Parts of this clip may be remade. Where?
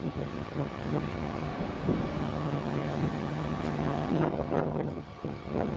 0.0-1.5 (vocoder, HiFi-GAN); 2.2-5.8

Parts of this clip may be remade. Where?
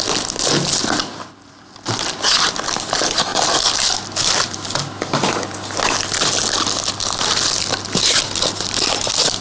none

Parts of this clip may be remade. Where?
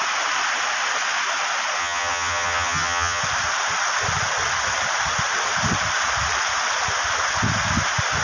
1.8-3.2 (vocoder, HiFi-GAN)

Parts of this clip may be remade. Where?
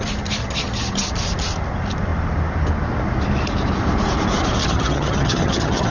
0.4-1.1 (vocoder, HiFi-GAN); 4.6-5.9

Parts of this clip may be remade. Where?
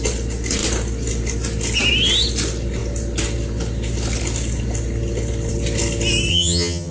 6.3-6.9 (vocoder, HiFi-GAN)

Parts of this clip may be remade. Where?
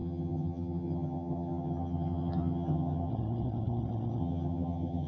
0.0-3.1 (vocoder, HiFi-GAN); 4.2-5.1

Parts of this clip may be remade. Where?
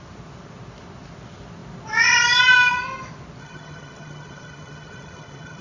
3.4-5.6 (vocoder, HiFi-GAN)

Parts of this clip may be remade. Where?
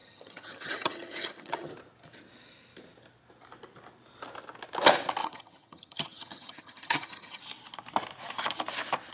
0.0-1.7 (vocoder, HiFi-GAN); 5.2-7.4